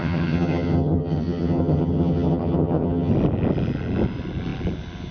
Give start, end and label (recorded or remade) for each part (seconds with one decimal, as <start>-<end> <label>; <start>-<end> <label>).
0.0-3.1 remade; 3.1-5.1 recorded